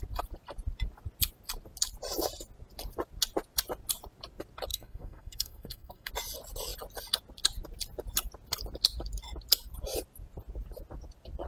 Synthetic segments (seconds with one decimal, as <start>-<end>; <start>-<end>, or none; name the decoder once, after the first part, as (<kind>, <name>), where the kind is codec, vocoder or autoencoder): 4.7-6.1 (codec, SNAC)